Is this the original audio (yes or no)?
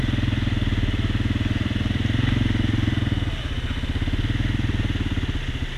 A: yes